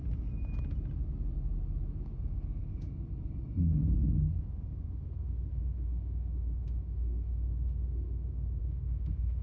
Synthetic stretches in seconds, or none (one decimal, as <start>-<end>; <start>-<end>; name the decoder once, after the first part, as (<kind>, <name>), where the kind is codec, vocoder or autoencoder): 4.4-9.4 (autoencoder, DAC-VAE)